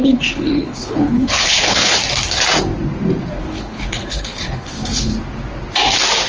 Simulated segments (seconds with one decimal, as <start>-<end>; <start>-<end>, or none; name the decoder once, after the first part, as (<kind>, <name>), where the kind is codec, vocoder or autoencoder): 0.0-2.0 (codec, HILCodec); 3.4-5.1